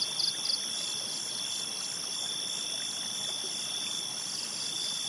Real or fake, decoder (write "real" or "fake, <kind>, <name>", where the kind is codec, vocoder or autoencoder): real